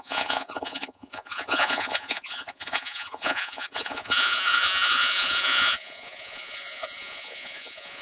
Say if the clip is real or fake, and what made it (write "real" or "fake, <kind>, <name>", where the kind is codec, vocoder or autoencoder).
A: fake, vocoder, Vocos